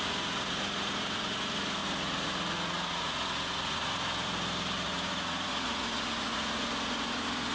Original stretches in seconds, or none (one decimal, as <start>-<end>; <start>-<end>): none